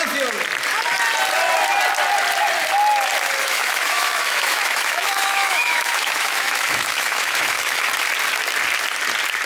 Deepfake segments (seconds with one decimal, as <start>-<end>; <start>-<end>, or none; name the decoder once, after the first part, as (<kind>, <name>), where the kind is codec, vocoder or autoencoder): 3.4-7.9 (autoencoder, DAC-VAE)